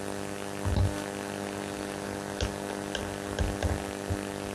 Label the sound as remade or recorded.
recorded